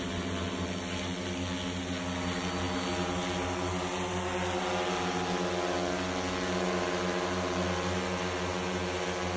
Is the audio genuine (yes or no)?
yes